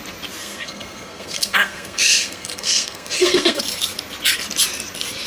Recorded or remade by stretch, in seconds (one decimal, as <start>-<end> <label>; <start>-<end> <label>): 0.0-0.4 recorded; 0.4-3.6 remade; 3.6-5.3 recorded